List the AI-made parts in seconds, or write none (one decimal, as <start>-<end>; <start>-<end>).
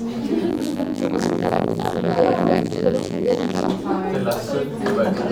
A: 0.5-3.7